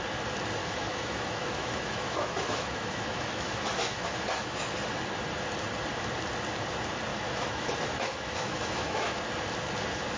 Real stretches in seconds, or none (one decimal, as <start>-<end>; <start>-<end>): 0.0-0.6; 4.7-7.1; 9.2-10.2